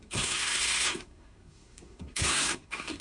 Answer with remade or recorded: remade